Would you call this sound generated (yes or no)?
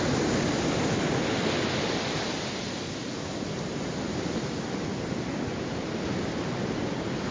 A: no